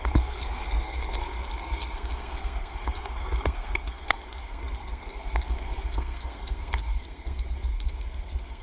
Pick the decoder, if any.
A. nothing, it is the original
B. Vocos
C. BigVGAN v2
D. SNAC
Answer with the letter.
D